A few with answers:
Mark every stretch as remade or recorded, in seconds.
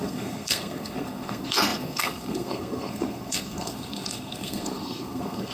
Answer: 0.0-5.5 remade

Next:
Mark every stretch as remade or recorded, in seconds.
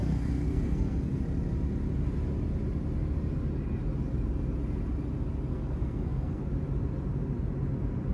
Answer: 0.0-1.2 remade; 1.2-5.5 recorded; 5.5-6.4 remade; 6.4-8.1 recorded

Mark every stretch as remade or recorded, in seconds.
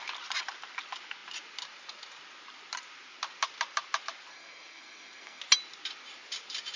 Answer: 0.0-4.3 recorded; 4.3-5.4 remade; 5.4-6.8 recorded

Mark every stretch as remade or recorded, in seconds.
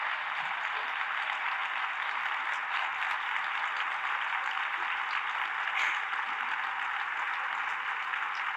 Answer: 0.0-8.6 recorded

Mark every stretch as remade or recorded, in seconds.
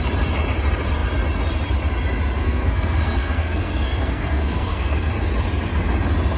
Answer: 0.0-2.4 recorded; 2.4-5.1 remade; 5.1-6.4 recorded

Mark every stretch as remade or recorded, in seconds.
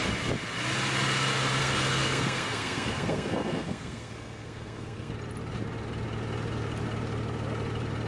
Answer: 0.0-1.6 recorded; 1.6-5.1 remade; 5.1-8.1 recorded